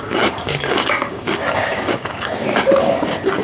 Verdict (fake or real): fake